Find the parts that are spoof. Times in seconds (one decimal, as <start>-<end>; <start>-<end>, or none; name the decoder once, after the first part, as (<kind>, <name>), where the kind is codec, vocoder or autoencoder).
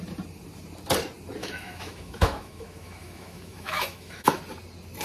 1.4-4.4 (autoencoder, DAC-VAE)